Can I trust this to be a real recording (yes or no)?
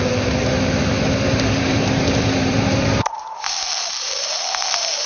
no